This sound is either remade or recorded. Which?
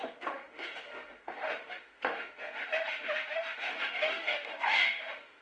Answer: remade